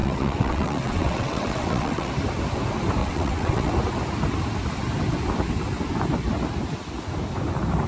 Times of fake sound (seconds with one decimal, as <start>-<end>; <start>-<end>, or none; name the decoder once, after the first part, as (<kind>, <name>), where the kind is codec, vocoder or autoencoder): 0.0-2.1 (vocoder, WaveNeXt); 3.0-3.7